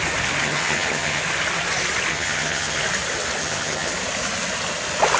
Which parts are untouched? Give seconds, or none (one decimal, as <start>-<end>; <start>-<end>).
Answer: 0.0-0.4; 1.2-2.1; 2.8-3.4; 3.9-5.2